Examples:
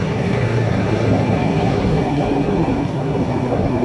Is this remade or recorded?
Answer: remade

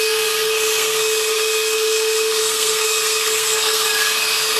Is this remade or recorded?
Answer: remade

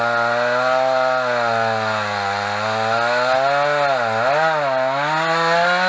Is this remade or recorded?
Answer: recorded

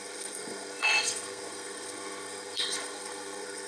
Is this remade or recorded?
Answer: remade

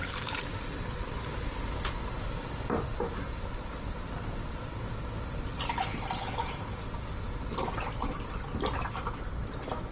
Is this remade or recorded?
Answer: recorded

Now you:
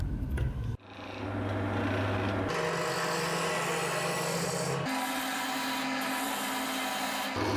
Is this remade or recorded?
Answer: recorded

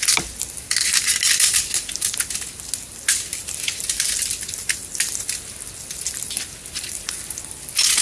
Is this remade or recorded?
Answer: recorded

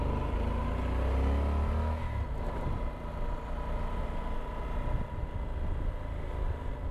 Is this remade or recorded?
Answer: recorded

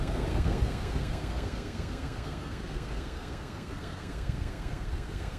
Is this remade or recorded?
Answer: remade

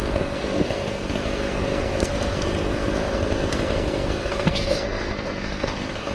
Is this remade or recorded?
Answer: remade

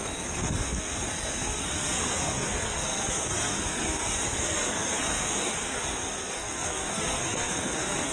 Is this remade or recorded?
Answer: remade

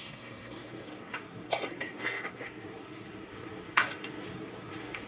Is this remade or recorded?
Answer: remade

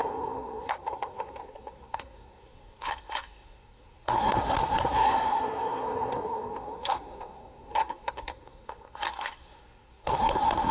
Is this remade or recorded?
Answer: remade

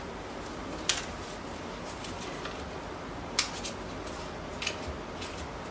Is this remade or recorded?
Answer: recorded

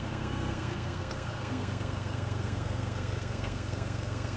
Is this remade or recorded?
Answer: remade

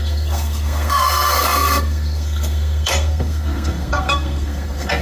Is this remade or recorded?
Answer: remade